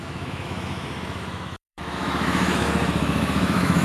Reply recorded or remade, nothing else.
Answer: remade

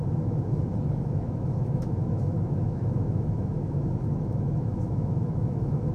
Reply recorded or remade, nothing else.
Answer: remade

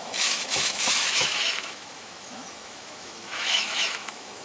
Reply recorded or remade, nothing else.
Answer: remade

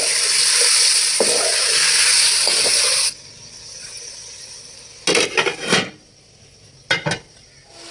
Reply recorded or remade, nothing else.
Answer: recorded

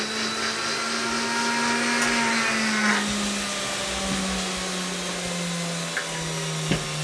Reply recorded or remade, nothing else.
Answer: recorded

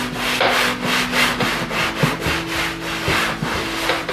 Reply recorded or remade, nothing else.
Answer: recorded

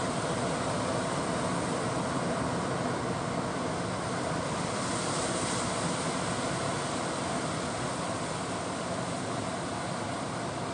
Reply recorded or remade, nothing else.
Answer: recorded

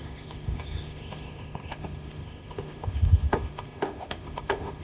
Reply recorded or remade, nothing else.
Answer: remade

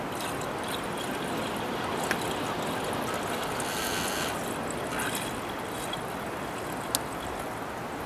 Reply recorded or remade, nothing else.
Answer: recorded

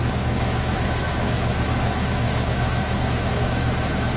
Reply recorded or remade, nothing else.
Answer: remade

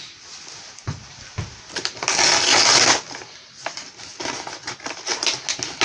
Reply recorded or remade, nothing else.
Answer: recorded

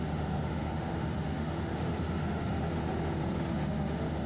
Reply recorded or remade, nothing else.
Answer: remade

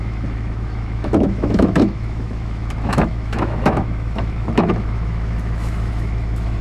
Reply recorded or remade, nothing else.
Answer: remade